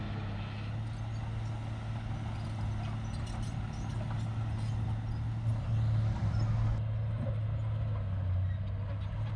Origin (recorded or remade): recorded